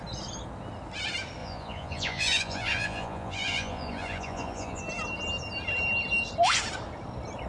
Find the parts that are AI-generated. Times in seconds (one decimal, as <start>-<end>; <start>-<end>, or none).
1.4-4.8